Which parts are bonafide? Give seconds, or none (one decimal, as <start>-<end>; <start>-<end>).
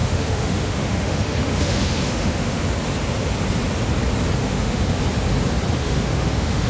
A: 2.6-4.4; 5.0-5.8